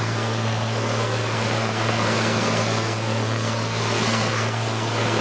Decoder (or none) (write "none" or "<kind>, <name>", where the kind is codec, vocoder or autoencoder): codec, SNAC